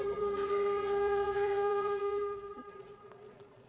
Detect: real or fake fake